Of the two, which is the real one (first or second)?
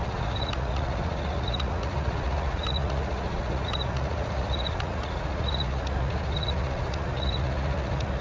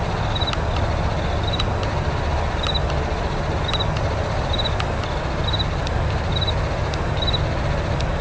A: second